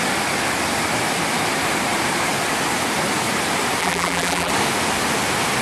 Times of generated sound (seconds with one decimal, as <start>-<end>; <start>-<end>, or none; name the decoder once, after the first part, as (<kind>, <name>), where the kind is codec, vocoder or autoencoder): 3.8-4.5 (vocoder, BigVGAN v2)